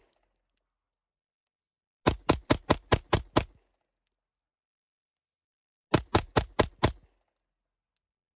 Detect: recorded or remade recorded